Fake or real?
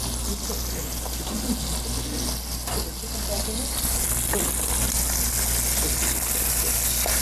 real